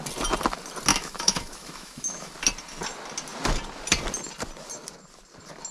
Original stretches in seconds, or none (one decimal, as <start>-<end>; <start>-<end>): 0.0-0.9; 2.3-5.7